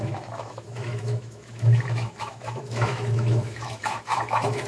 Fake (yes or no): yes